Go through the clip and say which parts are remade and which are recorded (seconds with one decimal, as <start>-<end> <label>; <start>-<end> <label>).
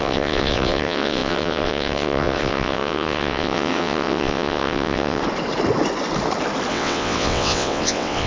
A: 0.0-5.2 remade; 5.2-6.7 recorded; 6.7-8.3 remade